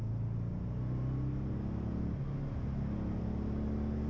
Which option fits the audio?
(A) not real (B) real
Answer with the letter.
B